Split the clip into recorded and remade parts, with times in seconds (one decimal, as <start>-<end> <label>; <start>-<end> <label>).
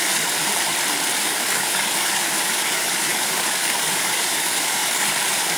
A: 0.0-0.5 remade; 0.5-1.2 recorded; 1.2-5.6 remade